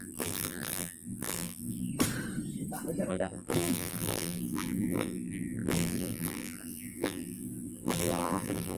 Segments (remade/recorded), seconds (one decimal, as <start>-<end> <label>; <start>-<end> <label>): 0.0-1.9 remade; 1.9-3.1 recorded; 3.1-8.8 remade